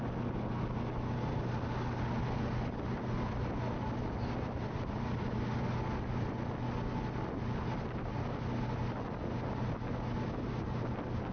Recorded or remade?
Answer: recorded